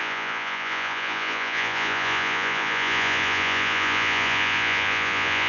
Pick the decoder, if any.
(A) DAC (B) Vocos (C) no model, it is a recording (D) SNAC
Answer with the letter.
B